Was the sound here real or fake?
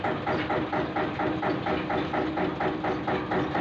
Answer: real